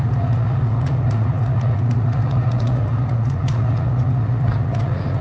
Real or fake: fake